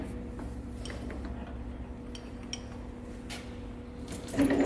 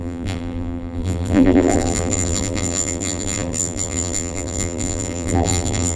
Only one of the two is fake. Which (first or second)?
second